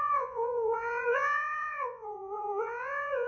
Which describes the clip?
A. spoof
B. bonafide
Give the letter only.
A